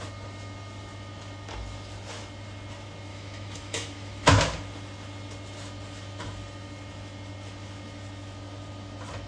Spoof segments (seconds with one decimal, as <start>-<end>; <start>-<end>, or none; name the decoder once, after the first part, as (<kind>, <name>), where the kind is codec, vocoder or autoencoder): 3.1-4.4 (autoencoder, DAC-VAE)